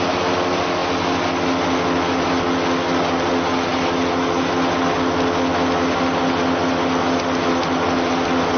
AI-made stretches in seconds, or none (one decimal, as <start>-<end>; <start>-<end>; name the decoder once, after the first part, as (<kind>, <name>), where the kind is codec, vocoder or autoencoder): none

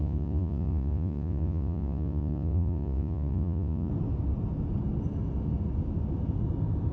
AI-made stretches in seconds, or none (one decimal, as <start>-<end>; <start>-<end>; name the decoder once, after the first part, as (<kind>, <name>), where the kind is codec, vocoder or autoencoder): 0.0-3.9 (vocoder, Vocos)

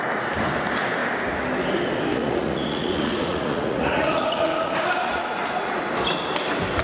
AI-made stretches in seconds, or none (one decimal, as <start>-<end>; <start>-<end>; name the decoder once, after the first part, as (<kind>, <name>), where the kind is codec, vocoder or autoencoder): 2.1-5.8 (vocoder, Vocos)

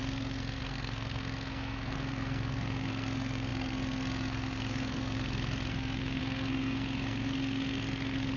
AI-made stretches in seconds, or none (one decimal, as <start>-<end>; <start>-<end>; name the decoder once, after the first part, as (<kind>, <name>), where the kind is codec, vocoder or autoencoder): 0.0-8.4 (codec, SNAC)

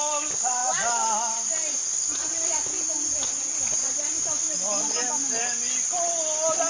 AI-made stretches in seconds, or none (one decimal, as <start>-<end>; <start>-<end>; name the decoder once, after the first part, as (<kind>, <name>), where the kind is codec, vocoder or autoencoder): none

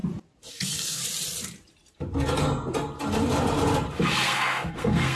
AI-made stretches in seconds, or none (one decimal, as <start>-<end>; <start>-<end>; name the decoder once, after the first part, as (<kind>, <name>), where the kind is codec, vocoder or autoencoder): 0.5-1.0 (codec, SNAC); 4.1-5.2

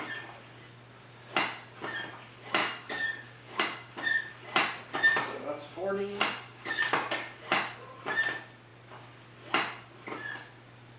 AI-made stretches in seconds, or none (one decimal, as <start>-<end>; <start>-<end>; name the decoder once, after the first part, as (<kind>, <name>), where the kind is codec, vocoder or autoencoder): 2.6-4.3 (codec, DAC); 5.7-7.0

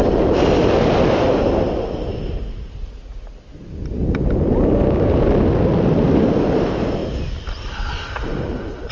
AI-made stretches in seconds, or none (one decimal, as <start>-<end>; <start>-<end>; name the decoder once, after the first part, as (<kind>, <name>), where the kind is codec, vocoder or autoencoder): none